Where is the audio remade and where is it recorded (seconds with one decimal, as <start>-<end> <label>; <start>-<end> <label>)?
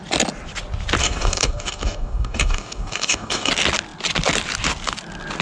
0.0-1.0 recorded; 1.0-3.5 remade; 3.5-5.4 recorded